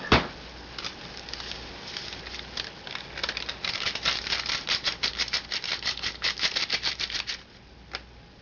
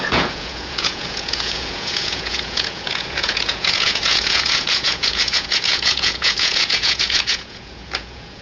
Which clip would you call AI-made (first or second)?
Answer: second